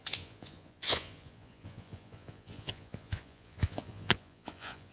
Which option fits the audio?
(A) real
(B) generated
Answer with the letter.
B